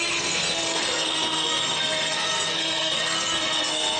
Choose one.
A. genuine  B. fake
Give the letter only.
B